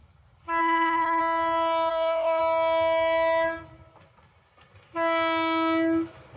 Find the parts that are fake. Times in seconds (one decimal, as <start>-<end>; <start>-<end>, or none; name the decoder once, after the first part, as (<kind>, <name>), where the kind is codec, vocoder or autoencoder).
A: 0.6-1.2 (codec, SNAC); 1.9-2.4

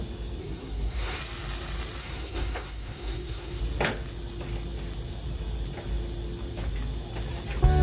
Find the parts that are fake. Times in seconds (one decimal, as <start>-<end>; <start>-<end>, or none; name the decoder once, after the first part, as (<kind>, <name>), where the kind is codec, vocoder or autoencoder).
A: 0.4-1.2 (codec, SNAC); 2.0-3.6